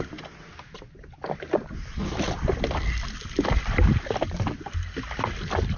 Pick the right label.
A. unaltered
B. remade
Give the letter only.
A